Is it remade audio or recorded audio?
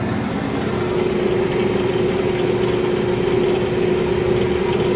recorded